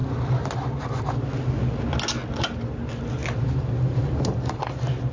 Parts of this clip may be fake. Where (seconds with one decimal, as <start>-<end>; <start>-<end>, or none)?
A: none